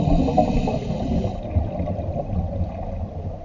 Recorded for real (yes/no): yes